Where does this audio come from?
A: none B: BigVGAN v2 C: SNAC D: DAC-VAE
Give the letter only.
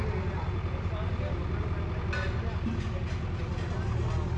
A